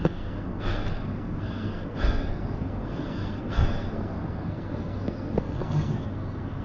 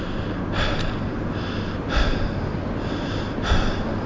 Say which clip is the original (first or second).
second